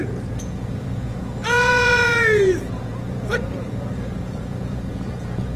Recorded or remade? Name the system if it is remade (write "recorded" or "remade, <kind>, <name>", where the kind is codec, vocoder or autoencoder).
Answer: remade, vocoder, Vocos